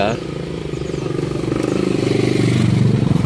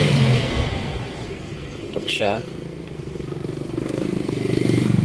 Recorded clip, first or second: first